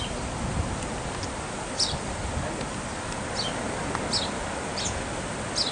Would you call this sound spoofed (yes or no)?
no